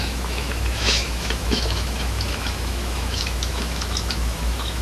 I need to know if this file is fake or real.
fake